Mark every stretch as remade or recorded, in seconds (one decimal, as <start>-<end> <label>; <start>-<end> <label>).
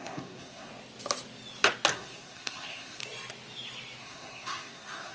0.0-0.7 remade; 0.7-1.9 recorded; 1.9-3.0 remade; 3.0-4.0 recorded; 4.0-5.1 remade